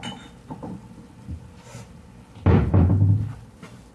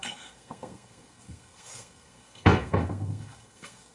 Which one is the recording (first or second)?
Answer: first